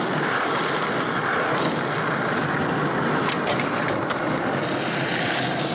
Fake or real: real